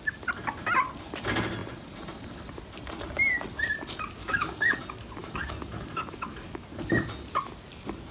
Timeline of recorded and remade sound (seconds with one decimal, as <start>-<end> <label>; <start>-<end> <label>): 0.0-4.2 recorded; 4.2-4.8 remade; 4.8-5.2 recorded; 5.2-6.7 remade; 6.7-8.1 recorded